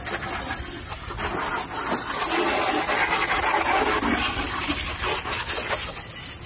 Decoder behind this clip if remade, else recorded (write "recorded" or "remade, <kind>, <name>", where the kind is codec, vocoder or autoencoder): recorded